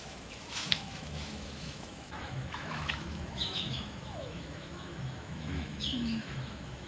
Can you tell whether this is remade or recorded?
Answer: remade